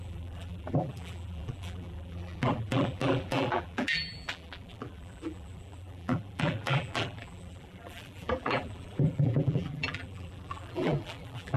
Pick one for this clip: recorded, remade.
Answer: remade